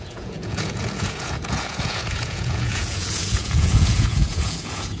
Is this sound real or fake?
fake